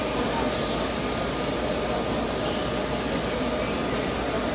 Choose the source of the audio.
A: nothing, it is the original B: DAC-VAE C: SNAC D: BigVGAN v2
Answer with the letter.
A